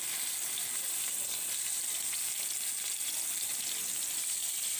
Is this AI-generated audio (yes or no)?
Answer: no